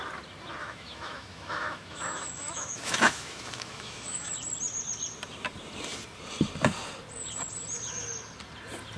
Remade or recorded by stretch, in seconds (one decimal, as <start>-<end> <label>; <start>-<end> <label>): 0.0-0.6 recorded; 0.6-4.3 remade; 4.3-9.0 recorded